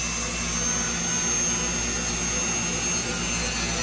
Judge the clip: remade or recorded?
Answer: recorded